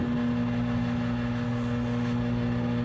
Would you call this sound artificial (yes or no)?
no